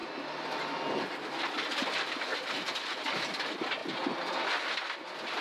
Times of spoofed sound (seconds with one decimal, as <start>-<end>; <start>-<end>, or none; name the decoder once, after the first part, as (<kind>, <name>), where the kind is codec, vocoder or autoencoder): none